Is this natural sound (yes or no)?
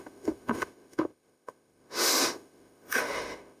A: no